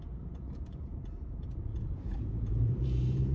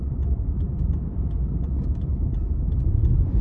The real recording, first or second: second